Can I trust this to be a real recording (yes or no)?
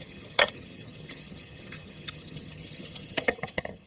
no